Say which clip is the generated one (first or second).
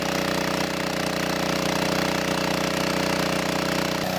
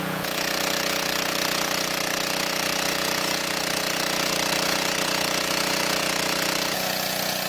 second